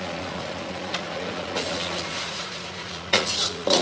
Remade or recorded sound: remade